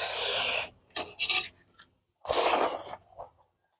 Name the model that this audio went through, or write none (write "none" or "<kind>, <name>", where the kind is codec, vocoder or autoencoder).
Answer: none